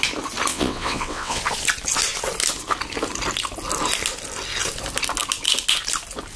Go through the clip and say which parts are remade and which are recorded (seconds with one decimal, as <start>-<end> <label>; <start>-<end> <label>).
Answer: 0.0-0.5 recorded; 0.5-1.4 remade; 1.4-6.4 recorded